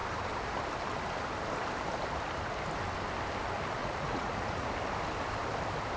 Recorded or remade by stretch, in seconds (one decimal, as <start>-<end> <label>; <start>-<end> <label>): 0.0-3.8 recorded; 3.8-4.7 remade; 4.7-6.0 recorded